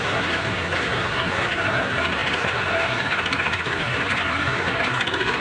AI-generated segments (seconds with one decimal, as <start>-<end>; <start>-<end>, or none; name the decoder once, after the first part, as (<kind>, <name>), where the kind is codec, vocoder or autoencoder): 0.0-5.4 (codec, SNAC)